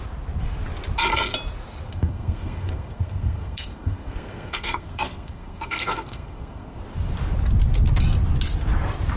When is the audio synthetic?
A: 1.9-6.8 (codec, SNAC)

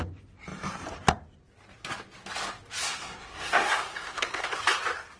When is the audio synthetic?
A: 2.8-4.6 (codec, SNAC)

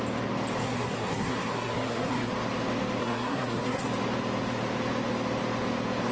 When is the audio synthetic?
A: 0.6-2.3 (codec, SNAC); 3.0-3.9